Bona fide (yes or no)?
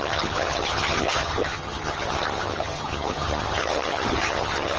no